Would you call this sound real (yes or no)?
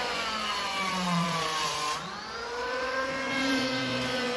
no